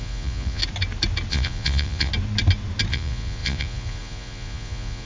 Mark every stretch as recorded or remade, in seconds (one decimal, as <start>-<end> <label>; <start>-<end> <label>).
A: 0.0-0.6 remade; 0.6-1.3 recorded; 1.3-2.1 remade; 2.1-2.9 recorded; 2.9-5.1 remade